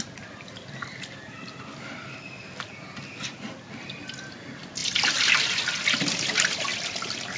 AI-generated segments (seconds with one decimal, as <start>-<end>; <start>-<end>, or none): none